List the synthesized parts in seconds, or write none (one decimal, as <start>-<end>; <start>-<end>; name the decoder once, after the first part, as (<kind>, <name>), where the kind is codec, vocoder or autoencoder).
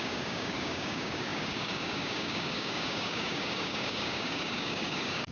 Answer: 0.0-5.3 (codec, DAC)